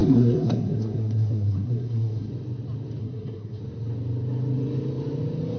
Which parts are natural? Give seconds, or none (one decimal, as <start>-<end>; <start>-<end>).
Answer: 2.3-3.0; 3.6-5.6